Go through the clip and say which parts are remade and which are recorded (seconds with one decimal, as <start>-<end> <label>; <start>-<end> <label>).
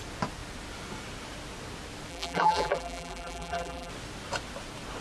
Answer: 0.0-2.1 recorded; 2.1-3.9 remade; 3.9-5.0 recorded